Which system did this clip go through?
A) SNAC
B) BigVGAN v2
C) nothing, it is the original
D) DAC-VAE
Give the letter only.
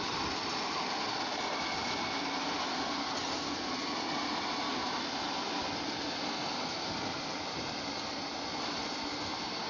C